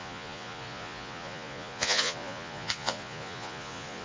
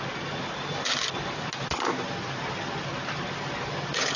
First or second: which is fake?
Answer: first